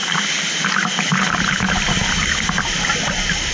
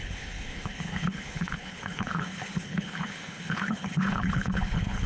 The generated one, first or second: second